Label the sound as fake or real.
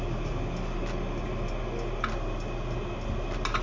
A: real